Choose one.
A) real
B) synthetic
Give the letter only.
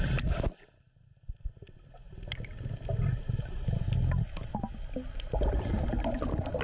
A